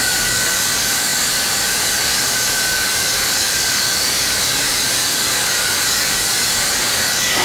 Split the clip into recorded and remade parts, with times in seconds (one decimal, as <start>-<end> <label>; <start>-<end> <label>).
0.0-7.4 remade